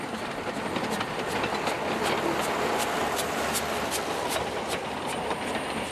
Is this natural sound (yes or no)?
yes